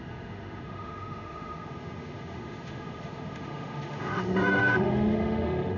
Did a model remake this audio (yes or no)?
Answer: yes